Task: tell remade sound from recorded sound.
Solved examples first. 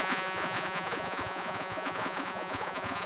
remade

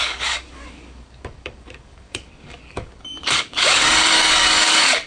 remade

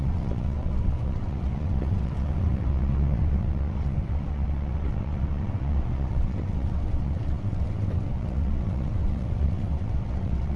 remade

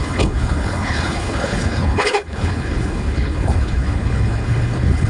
remade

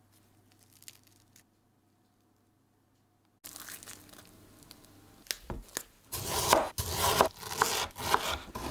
recorded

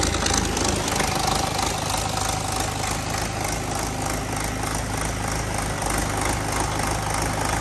recorded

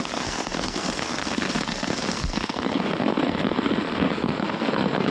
remade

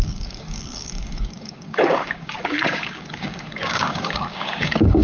remade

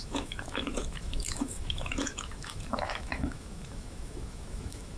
remade